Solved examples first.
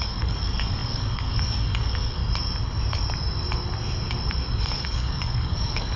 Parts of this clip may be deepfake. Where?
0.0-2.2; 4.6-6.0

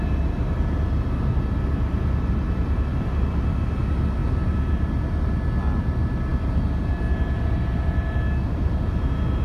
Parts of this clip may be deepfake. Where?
none

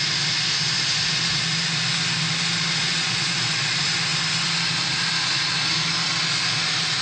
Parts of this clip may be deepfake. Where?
2.8-3.3